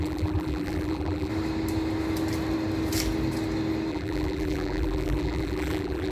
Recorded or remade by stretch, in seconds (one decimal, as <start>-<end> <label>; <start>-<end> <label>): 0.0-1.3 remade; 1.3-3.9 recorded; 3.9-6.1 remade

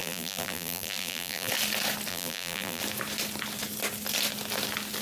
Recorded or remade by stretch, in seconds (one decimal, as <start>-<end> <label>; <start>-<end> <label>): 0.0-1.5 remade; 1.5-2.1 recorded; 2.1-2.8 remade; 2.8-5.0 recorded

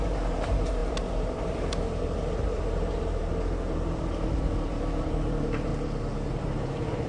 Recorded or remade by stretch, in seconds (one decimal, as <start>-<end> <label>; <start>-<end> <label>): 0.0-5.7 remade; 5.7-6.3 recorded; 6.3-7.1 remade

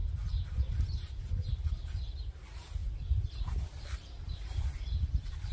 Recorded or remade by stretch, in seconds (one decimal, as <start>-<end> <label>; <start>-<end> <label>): 0.0-2.3 remade; 2.3-5.5 recorded

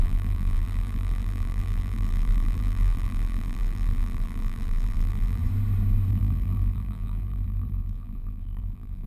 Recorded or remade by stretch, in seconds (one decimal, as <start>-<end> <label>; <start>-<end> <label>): 0.0-5.4 remade; 5.4-6.1 recorded; 6.1-9.1 remade

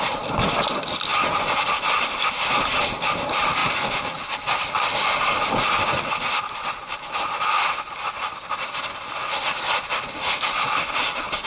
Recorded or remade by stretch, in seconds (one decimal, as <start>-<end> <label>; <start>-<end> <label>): 0.0-11.5 recorded